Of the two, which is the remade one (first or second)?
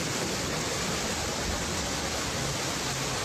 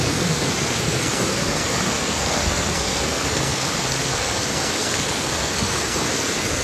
second